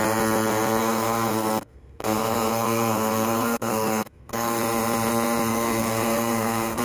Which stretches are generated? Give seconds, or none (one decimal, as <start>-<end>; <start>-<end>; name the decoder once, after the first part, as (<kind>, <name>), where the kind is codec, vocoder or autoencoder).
0.8-4.6 (codec, SNAC); 5.5-6.8

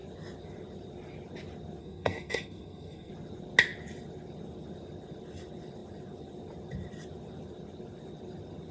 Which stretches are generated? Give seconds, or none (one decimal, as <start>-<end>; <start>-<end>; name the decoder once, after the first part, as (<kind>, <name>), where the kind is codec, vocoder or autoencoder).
1.8-3.1 (codec, SNAC)

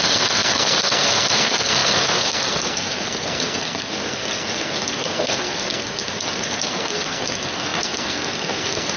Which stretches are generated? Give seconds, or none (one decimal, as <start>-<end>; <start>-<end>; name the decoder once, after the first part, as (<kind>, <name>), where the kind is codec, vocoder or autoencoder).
0.0-9.0 (codec, SNAC)

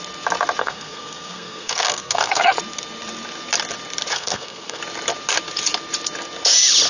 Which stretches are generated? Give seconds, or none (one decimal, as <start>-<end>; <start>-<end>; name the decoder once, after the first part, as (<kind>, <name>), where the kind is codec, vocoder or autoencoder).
0.6-2.5 (codec, SNAC); 4.1-4.8